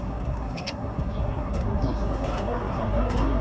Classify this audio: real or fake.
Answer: fake